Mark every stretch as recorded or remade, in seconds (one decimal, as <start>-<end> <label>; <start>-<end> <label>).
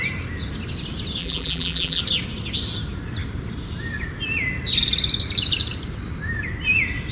0.0-1.2 recorded; 1.2-2.0 remade; 2.0-7.1 recorded